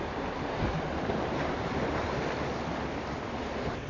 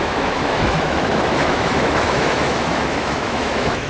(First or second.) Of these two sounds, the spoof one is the second